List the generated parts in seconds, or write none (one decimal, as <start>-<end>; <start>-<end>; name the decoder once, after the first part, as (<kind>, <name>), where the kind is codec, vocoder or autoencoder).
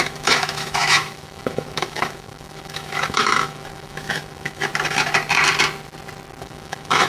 0.0-4.7 (autoencoder, DAC-VAE); 6.4-7.1